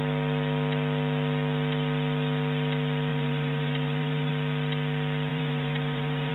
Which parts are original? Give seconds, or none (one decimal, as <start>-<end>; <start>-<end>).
0.0-3.1; 4.3-5.3